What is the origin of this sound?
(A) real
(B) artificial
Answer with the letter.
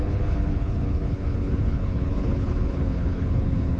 B